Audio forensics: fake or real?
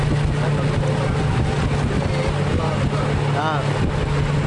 real